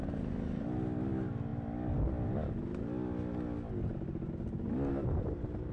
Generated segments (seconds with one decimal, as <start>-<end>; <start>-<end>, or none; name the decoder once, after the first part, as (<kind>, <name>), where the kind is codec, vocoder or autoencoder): none